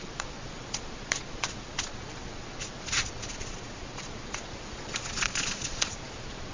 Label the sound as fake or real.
fake